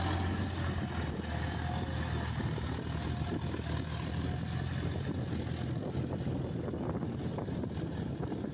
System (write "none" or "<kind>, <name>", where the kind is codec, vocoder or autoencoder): none